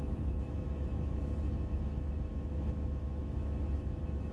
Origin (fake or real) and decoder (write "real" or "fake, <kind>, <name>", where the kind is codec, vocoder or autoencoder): fake, autoencoder, DAC-VAE